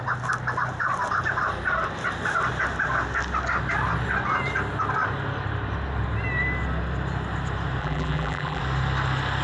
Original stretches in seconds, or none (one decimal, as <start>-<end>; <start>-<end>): 0.0-7.8; 8.6-9.4